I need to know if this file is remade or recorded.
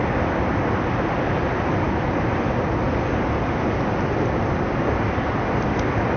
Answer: recorded